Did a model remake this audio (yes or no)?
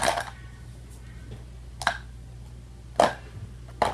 no